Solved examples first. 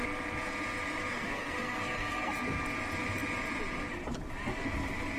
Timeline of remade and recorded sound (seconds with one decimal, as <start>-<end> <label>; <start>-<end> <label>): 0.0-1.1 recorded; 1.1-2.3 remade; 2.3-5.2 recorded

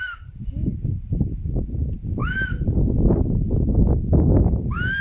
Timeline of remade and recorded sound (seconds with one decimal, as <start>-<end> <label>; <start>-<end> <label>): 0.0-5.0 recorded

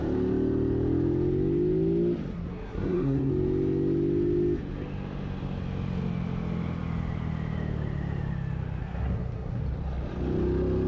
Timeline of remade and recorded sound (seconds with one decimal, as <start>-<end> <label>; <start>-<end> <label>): 0.0-2.3 recorded; 2.3-3.3 remade; 3.3-8.8 recorded; 8.8-9.6 remade; 9.6-10.9 recorded